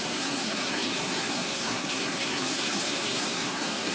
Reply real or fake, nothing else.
fake